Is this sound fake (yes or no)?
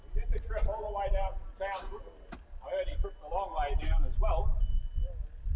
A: no